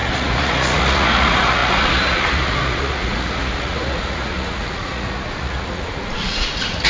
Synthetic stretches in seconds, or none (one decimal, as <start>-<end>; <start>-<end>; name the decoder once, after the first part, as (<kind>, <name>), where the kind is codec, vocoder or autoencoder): 0.0-6.9 (vocoder, Vocos)